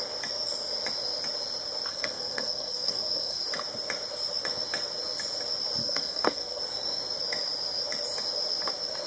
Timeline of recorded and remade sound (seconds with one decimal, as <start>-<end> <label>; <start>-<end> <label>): 0.0-1.9 recorded; 1.9-3.4 remade; 3.4-5.8 recorded; 5.8-6.6 remade; 6.6-9.1 recorded